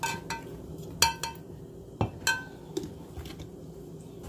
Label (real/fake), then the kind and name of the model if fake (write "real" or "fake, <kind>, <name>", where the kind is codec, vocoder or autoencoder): real